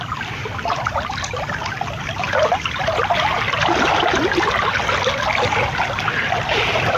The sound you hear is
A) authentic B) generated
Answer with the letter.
A